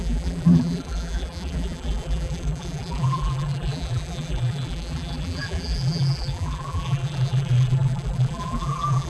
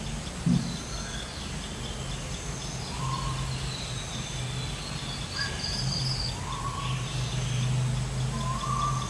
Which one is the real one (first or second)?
second